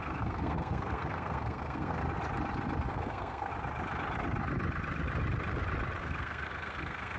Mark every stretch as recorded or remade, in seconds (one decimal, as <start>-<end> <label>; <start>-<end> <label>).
0.0-2.0 remade; 2.0-2.9 recorded; 2.9-3.5 remade; 3.5-6.0 recorded; 6.0-7.2 remade